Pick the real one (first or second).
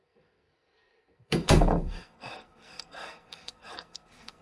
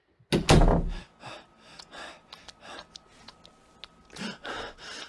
second